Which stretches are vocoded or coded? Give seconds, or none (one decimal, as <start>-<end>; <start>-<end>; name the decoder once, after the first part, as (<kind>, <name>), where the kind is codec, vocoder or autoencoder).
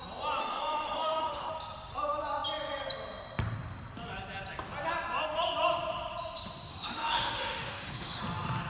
0.4-1.5 (autoencoder, DAC-VAE); 6.7-8.2